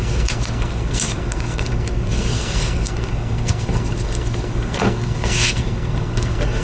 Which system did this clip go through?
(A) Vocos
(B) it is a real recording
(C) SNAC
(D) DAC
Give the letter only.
C